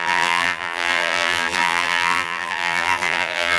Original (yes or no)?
no